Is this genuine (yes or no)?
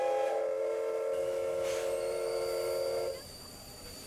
yes